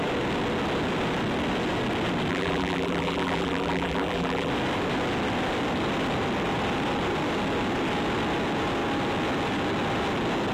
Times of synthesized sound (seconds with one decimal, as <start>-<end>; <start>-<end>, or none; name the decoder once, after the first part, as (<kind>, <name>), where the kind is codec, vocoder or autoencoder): 2.3-4.5 (vocoder, BigVGAN v2)